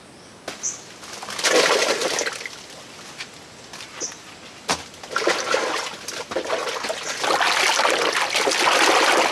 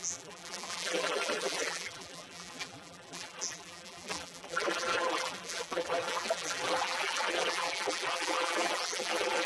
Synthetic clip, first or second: second